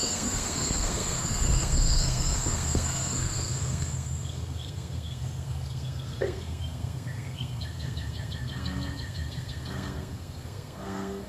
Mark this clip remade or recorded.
remade